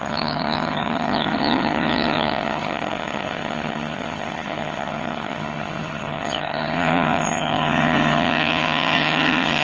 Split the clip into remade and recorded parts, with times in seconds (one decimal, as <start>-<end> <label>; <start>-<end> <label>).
0.0-9.6 remade

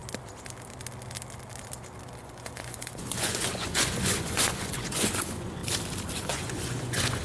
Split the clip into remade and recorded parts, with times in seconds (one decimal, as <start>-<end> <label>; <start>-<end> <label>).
0.0-2.2 recorded; 2.2-5.6 remade; 5.6-6.1 recorded; 6.1-7.2 remade